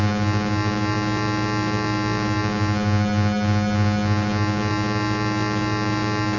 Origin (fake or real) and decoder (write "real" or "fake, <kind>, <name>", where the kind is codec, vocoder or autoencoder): real